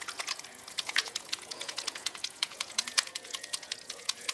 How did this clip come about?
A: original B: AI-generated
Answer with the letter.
B